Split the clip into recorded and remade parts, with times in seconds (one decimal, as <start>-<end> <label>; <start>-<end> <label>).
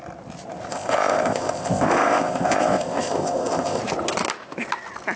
0.0-0.7 recorded; 0.7-3.8 remade; 3.8-5.2 recorded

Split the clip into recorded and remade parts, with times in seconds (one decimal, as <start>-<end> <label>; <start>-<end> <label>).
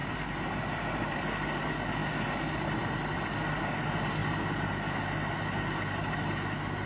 0.0-6.9 recorded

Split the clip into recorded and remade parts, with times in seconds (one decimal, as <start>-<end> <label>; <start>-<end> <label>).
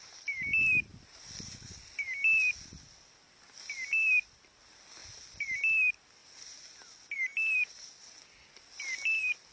0.0-9.5 recorded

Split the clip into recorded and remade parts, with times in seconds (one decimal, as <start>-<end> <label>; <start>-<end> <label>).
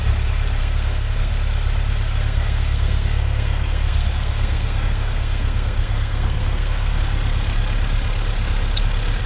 0.0-0.6 recorded; 0.6-1.3 remade; 1.3-2.1 recorded; 2.1-7.0 remade; 7.0-9.3 recorded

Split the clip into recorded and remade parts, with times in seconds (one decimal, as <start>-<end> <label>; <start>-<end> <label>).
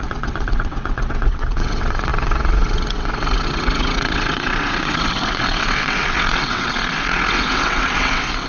0.0-8.5 remade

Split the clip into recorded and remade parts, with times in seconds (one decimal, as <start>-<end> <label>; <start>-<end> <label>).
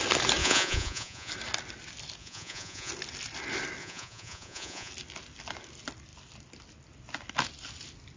0.0-0.4 recorded; 0.4-1.3 remade; 1.3-2.2 recorded; 2.2-2.9 remade; 2.9-3.8 recorded; 3.8-4.9 remade; 4.9-8.2 recorded